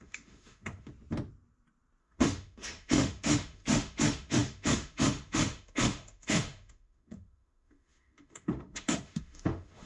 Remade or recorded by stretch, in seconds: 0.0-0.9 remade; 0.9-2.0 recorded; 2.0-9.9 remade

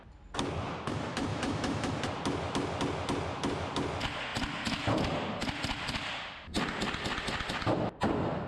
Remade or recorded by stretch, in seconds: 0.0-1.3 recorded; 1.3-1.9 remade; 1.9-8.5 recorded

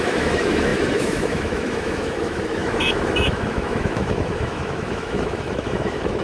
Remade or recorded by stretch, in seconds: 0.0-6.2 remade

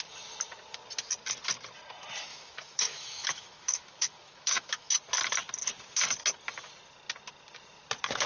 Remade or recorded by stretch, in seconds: 0.0-2.3 recorded; 2.3-4.9 remade; 4.9-8.3 recorded

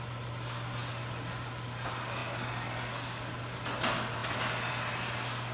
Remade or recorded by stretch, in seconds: 0.0-5.5 recorded

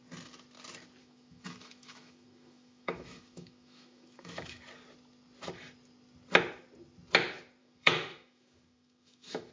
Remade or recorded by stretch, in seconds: 0.0-1.0 recorded; 1.0-4.6 remade; 4.6-7.6 recorded; 7.6-9.5 remade